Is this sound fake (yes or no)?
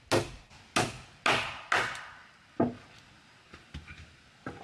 no